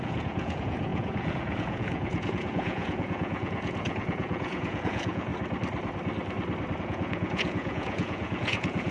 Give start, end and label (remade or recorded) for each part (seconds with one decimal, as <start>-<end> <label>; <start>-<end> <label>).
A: 0.0-5.3 remade; 5.3-6.8 recorded; 6.8-8.9 remade